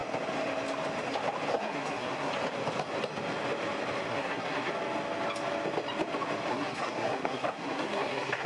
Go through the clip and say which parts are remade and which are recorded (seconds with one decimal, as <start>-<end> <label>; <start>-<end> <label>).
0.0-1.5 recorded; 1.5-2.3 remade; 2.3-4.1 recorded; 4.1-4.7 remade; 4.7-6.5 recorded; 6.5-8.5 remade